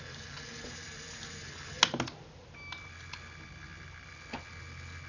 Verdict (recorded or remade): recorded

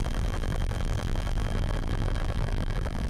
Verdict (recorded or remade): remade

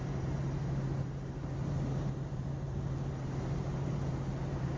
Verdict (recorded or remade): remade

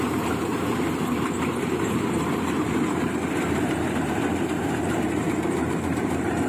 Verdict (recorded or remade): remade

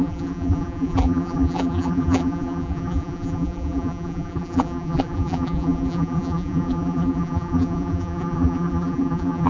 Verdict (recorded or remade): remade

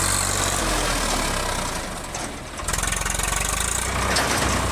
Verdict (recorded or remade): recorded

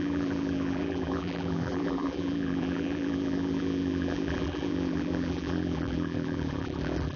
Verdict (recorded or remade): remade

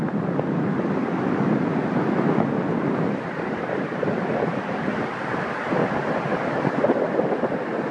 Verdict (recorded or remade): recorded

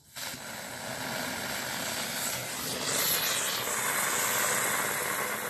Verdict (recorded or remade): recorded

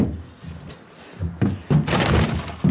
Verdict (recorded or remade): recorded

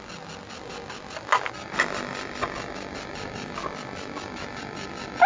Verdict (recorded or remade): recorded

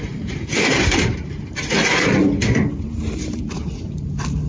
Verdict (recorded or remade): remade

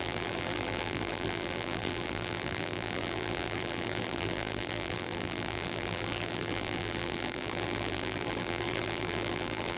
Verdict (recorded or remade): remade